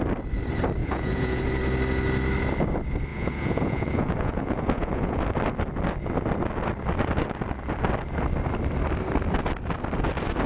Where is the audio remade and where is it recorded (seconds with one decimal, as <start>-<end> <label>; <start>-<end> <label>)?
0.0-0.8 recorded; 0.8-1.4 remade; 1.4-3.1 recorded; 3.1-5.2 remade; 5.2-10.5 recorded